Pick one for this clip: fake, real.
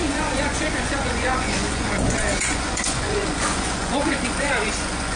fake